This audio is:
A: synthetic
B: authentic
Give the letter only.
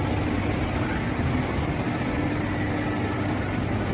B